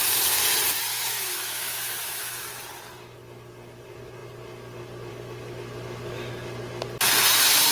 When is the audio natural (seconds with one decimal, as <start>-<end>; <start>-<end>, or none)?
0.0-0.9; 2.4-7.7